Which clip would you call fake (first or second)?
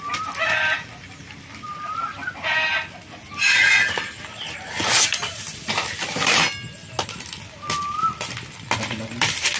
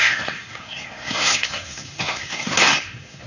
second